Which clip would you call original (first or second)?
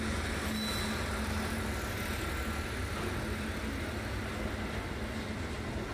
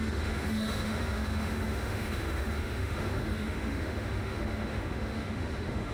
first